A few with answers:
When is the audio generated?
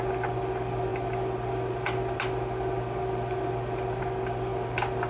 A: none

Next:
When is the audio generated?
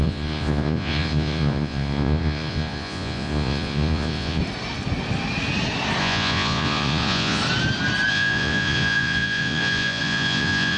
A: 0.0-4.4; 6.0-7.4; 8.1-10.8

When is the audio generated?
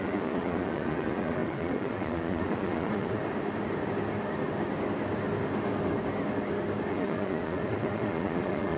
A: 0.0-3.2; 6.9-8.8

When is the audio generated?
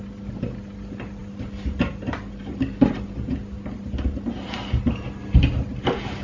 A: none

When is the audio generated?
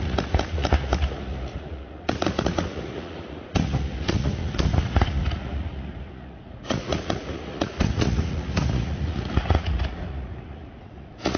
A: 0.0-11.4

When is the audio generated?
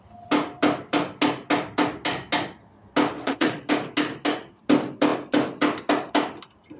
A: 3.2-3.7